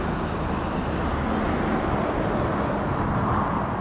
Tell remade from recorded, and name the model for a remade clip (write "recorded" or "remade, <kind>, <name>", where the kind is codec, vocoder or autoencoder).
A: remade, vocoder, BigVGAN v2